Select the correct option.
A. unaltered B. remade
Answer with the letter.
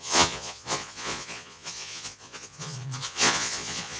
B